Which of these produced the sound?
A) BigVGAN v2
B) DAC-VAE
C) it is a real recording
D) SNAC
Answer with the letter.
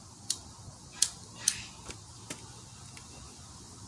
C